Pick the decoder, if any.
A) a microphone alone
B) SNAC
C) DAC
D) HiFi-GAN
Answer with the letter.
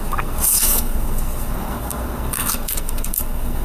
B